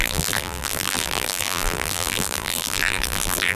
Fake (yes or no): yes